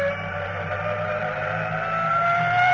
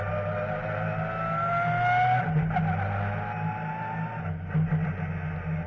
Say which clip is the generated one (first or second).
first